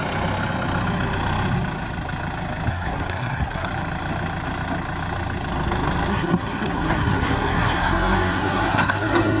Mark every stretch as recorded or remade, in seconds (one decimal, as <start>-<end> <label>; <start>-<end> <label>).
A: 0.0-2.7 recorded; 2.7-3.7 remade; 3.7-6.1 recorded; 6.1-9.4 remade